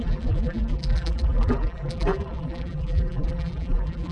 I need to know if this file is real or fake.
fake